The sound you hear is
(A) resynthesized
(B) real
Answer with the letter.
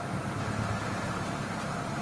B